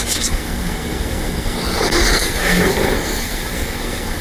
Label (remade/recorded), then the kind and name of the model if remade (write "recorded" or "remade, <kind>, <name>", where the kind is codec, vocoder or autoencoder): remade, codec, SNAC